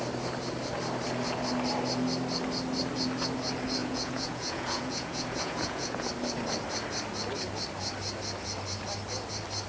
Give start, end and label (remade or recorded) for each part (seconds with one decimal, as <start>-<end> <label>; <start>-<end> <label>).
0.0-3.8 recorded; 3.8-6.1 remade; 6.1-9.7 recorded